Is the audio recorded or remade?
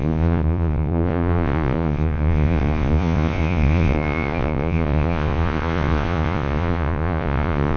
remade